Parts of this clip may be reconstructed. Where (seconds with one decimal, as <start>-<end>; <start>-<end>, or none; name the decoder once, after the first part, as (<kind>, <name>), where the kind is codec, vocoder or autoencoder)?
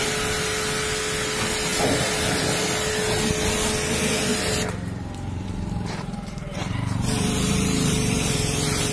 4.3-8.9 (vocoder, BigVGAN v2)